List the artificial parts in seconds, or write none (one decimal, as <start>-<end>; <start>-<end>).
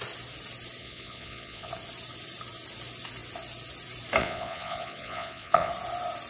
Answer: 0.8-1.7; 4.2-5.7